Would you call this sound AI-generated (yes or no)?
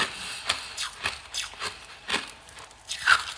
no